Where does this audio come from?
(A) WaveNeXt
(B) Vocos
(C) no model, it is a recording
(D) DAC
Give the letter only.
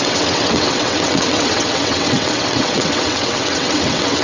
A